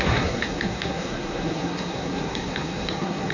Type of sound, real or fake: fake